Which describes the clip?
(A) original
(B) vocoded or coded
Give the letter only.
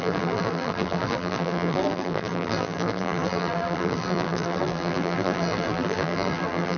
B